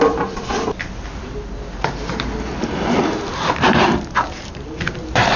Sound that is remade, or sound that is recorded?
remade